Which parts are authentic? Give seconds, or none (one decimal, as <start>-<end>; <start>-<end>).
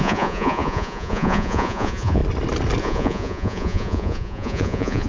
2.2-2.8